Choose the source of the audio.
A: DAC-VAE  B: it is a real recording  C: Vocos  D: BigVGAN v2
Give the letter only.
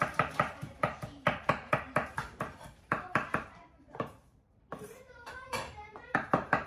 D